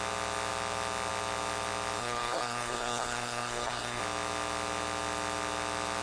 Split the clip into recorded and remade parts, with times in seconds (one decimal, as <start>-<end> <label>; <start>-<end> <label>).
0.0-2.0 recorded; 2.0-4.0 remade; 4.0-6.0 recorded